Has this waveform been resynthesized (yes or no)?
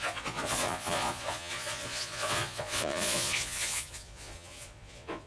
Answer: yes